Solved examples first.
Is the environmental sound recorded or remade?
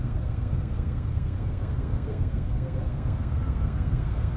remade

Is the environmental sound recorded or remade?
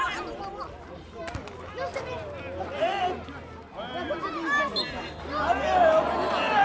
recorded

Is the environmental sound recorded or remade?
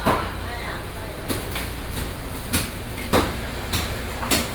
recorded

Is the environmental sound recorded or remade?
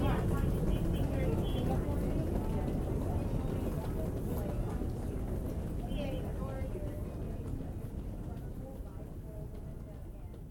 recorded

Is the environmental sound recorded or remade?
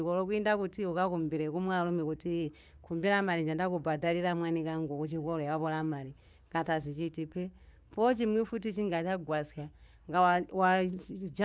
remade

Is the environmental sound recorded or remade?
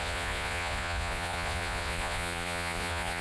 remade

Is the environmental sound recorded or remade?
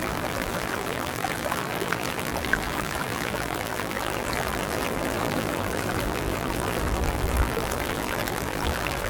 remade